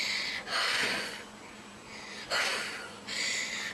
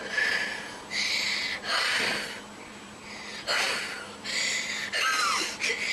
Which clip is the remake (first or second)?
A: first